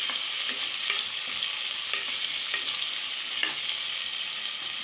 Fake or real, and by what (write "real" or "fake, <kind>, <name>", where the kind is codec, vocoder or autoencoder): real